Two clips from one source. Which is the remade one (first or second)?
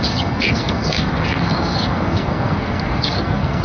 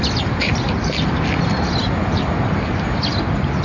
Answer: first